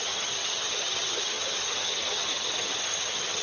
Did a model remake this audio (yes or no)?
yes